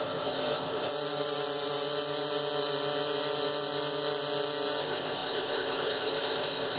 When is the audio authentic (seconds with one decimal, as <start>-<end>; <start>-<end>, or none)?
0.9-4.8